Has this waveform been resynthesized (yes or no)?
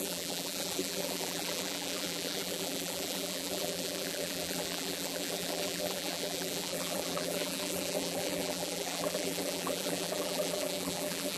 yes